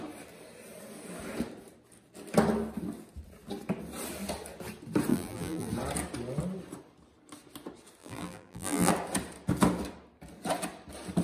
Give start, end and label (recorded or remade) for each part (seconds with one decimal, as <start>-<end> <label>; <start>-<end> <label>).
0.0-5.1 recorded; 5.1-5.7 remade; 5.7-8.0 recorded; 8.0-8.9 remade; 8.9-11.2 recorded